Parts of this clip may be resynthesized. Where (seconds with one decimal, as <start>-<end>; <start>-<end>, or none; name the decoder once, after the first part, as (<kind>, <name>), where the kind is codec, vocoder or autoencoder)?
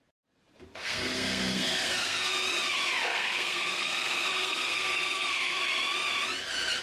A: 0.8-2.3 (codec, SNAC); 3.1-5.6